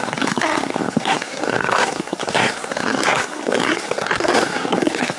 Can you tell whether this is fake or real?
fake